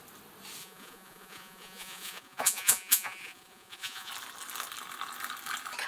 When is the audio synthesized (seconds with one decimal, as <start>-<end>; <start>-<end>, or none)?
0.6-4.1